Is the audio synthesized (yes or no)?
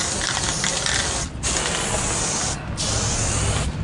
no